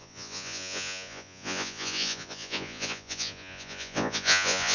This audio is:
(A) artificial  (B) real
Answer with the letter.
A